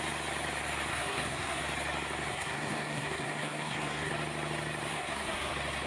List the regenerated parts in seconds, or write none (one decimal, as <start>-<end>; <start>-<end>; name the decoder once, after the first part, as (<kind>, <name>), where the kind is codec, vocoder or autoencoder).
0.9-1.6 (codec, SNAC); 2.3-4.1; 4.9-5.5